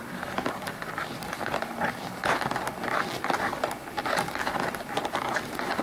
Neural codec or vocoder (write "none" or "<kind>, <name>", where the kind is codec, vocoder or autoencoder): none